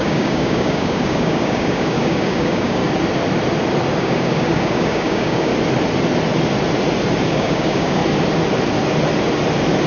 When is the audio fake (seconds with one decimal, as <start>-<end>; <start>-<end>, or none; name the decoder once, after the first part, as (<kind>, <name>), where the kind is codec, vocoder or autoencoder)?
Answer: 0.0-2.8 (codec, DAC); 4.0-5.5; 7.3-8.0